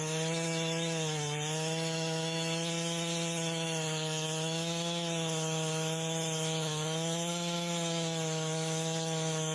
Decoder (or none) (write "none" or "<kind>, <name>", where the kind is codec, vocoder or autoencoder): autoencoder, DAC-VAE